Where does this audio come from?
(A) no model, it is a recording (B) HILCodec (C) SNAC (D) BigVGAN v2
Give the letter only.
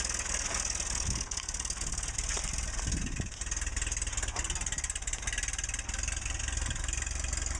A